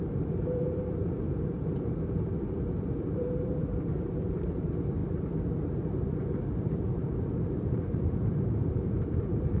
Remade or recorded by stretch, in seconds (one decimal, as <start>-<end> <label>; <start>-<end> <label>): 0.0-5.0 remade; 5.0-5.7 recorded; 5.7-9.6 remade